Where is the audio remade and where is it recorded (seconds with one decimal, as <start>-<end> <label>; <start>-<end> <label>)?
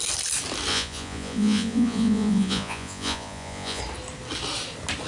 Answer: 0.0-0.7 recorded; 0.7-3.8 remade; 3.8-5.1 recorded